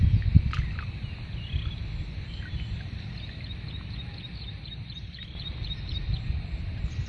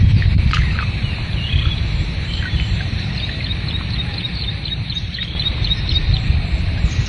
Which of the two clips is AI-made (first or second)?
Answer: second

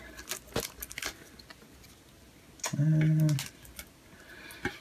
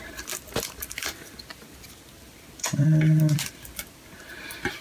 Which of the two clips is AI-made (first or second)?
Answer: second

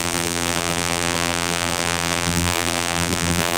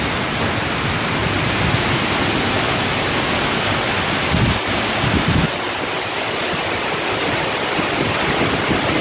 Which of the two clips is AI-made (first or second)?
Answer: first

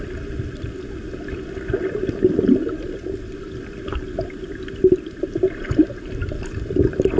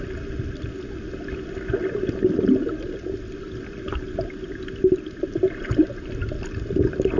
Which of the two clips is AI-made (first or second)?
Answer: first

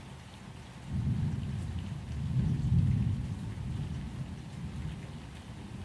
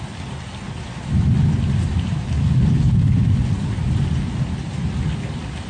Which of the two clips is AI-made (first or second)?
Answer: second